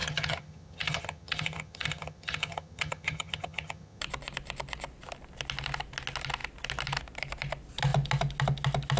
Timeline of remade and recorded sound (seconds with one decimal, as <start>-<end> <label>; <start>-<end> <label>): 0.0-4.0 remade; 4.0-9.0 recorded